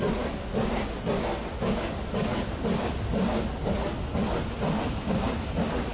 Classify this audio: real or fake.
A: real